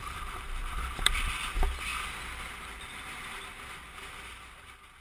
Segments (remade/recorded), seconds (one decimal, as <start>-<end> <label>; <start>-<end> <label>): 0.0-5.0 recorded

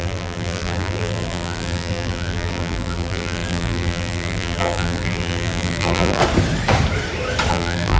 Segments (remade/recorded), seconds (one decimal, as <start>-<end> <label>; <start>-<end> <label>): 0.0-6.2 remade; 6.2-7.5 recorded; 7.5-8.0 remade

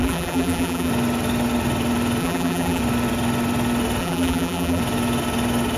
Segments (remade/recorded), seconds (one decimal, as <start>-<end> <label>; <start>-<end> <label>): 0.0-0.9 remade; 0.9-2.2 recorded; 2.2-2.8 remade; 2.8-4.0 recorded; 4.0-4.8 remade; 4.8-5.8 recorded

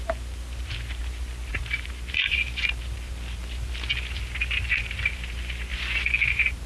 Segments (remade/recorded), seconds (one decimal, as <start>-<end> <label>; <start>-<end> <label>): 0.0-1.0 remade; 1.0-1.5 recorded; 1.5-3.4 remade; 3.4-4.7 recorded; 4.7-5.7 remade; 5.7-6.2 recorded; 6.2-6.7 remade